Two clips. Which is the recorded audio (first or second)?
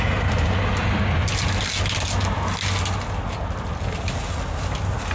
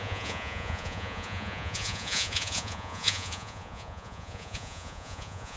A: first